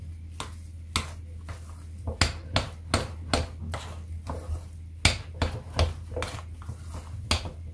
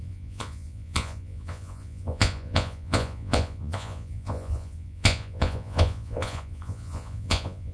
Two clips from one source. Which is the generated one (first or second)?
second